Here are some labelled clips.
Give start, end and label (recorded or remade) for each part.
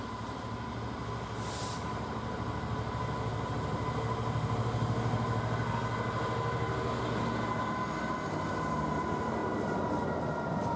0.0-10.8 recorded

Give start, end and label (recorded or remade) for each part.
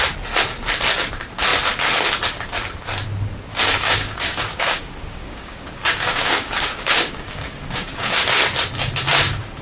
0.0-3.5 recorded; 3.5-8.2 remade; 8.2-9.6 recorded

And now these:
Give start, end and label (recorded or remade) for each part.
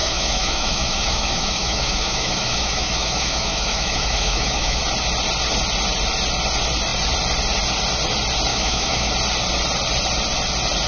0.0-4.8 remade; 4.8-8.5 recorded; 8.5-9.1 remade; 9.1-10.9 recorded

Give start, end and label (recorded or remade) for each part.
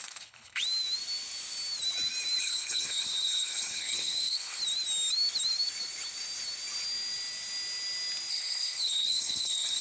0.0-0.6 remade; 0.6-2.4 recorded; 2.4-4.6 remade; 4.6-8.3 recorded; 8.3-9.8 remade